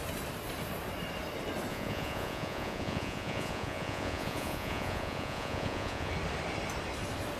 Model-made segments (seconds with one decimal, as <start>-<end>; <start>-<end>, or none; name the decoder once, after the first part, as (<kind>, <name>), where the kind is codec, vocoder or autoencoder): 1.7-6.1 (vocoder, Vocos)

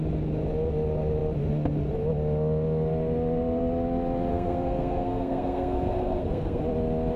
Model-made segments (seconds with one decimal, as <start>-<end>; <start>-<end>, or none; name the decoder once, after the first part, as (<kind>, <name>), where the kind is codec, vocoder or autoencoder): 4.3-6.6 (codec, SNAC)

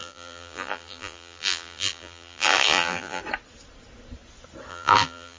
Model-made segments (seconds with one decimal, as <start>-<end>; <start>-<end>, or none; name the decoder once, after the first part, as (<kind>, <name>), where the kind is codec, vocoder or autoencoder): 0.0-3.2 (vocoder, BigVGAN v2); 4.7-5.4

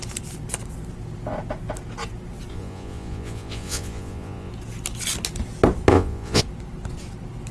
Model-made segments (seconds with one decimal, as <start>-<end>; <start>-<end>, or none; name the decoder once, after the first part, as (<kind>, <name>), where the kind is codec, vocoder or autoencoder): 2.5-4.5 (vocoder, Vocos); 5.9-6.4

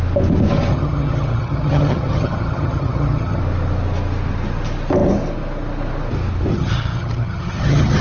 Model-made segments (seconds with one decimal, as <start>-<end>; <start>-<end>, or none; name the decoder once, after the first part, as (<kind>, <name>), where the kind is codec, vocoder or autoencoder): 0.7-3.4 (vocoder, HiFi-GAN); 6.5-8.0

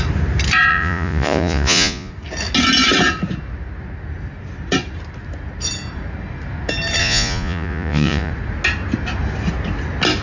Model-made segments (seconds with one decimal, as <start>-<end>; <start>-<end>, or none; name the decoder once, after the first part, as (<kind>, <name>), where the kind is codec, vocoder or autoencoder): 0.7-2.1 (vocoder, Vocos); 7.0-8.3

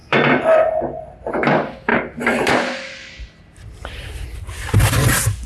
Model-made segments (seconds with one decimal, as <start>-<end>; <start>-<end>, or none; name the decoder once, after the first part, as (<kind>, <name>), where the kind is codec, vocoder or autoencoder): 0.0-1.3 (vocoder, BigVGAN v2); 1.9-2.5

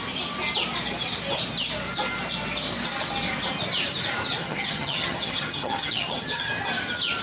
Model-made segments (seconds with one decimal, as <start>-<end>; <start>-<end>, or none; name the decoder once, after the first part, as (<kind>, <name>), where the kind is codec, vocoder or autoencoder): 4.4-6.5 (vocoder, HiFi-GAN)